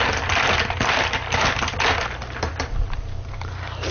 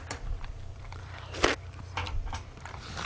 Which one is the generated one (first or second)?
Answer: second